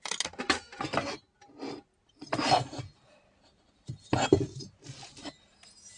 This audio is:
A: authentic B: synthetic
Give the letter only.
A